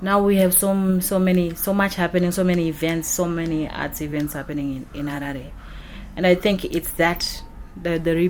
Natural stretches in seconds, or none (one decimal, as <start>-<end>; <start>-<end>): 0.0-4.1; 7.4-8.3